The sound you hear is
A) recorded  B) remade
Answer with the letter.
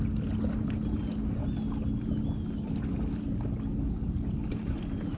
A